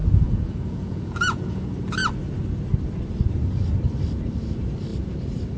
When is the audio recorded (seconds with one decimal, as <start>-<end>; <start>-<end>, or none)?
1.6-5.6